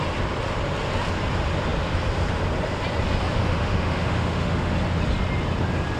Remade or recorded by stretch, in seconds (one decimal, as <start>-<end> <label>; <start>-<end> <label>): 0.0-3.4 recorded; 3.4-4.7 remade; 4.7-6.0 recorded

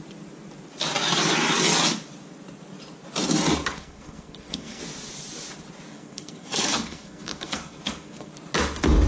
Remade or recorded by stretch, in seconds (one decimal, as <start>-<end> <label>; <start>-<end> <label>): 0.0-3.6 recorded; 3.6-4.8 remade; 4.8-5.9 recorded; 5.9-8.3 remade; 8.3-9.1 recorded

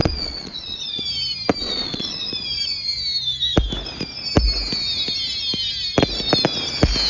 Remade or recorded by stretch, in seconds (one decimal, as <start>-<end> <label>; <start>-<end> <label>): 0.0-1.0 remade; 1.0-1.6 recorded; 1.6-2.3 remade; 2.3-7.1 recorded

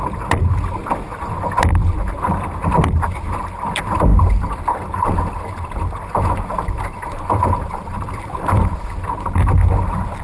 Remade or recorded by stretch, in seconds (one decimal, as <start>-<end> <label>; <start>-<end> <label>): 0.0-4.1 recorded; 4.1-8.6 remade; 8.6-10.2 recorded

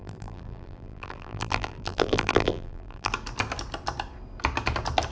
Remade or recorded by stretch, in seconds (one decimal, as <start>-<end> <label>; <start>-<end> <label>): 0.0-3.1 remade; 3.1-5.1 recorded

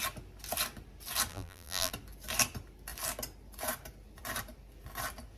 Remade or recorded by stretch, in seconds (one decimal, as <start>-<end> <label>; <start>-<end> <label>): 0.0-1.3 recorded; 1.3-1.9 remade; 1.9-5.4 recorded